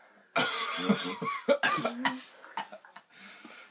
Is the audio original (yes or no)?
yes